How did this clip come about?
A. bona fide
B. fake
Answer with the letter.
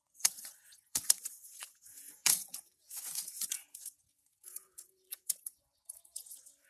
B